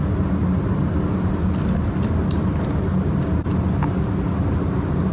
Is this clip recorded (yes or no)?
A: yes